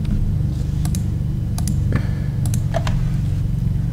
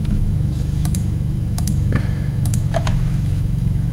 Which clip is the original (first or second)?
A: first